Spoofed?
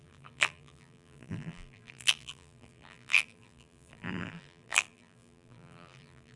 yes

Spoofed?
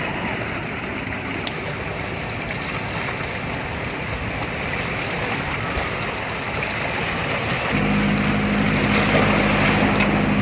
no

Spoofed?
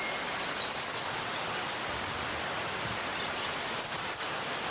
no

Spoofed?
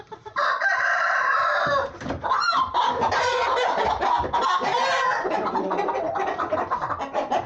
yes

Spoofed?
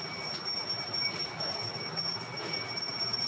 yes